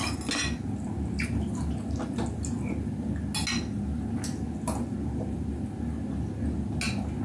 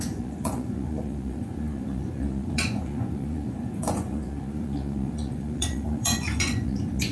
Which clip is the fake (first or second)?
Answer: second